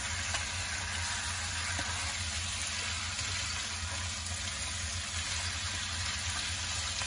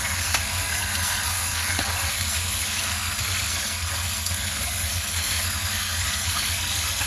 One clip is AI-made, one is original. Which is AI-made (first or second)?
second